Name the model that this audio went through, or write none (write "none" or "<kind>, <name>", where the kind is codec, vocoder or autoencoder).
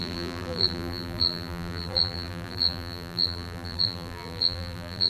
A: vocoder, BigVGAN v2